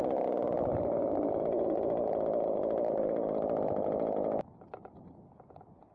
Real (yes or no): yes